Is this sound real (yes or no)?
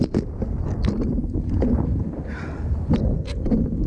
yes